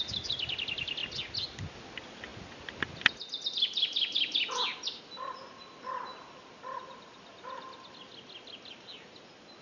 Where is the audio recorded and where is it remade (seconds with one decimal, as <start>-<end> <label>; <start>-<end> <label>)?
0.0-9.6 recorded